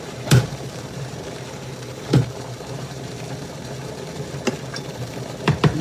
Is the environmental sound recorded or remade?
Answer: remade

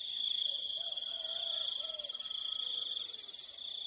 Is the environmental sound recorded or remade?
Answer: recorded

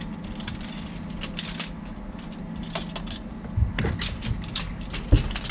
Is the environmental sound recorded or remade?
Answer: recorded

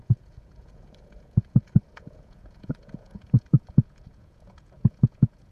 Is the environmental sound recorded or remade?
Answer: remade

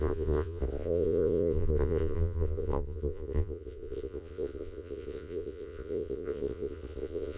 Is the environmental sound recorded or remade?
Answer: remade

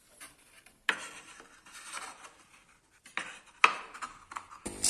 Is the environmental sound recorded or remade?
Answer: recorded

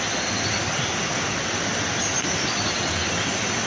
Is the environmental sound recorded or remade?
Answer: recorded